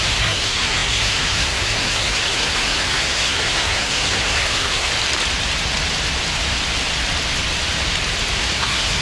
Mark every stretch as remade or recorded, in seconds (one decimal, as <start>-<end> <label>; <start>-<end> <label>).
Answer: 0.0-4.9 remade; 4.9-8.4 recorded; 8.4-9.0 remade